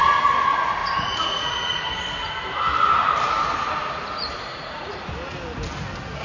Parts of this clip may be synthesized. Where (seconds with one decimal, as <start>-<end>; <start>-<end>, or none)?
0.8-1.8; 4.5-5.1